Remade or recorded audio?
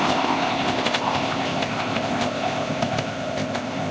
remade